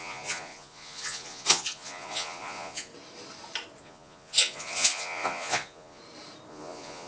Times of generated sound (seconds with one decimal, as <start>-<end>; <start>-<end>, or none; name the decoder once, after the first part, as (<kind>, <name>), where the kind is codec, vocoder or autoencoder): 0.0-2.9 (vocoder, Vocos); 3.8-6.0; 6.5-7.1